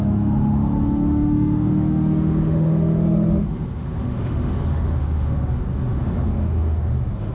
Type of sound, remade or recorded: remade